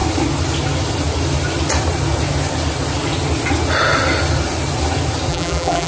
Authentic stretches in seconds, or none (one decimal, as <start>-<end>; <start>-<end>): 0.0-5.3